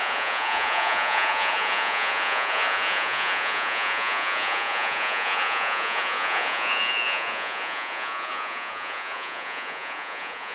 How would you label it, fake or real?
fake